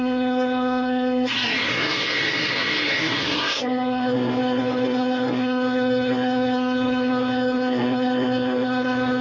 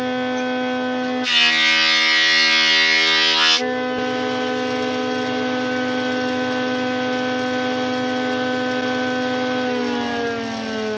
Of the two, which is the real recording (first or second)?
second